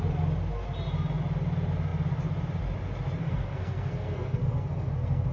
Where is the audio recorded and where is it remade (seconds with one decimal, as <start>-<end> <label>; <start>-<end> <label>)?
0.0-3.2 recorded; 3.2-5.3 remade